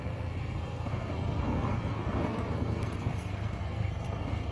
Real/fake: fake